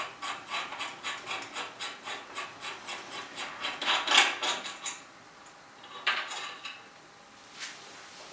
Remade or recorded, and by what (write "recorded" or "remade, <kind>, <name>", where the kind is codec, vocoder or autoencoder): recorded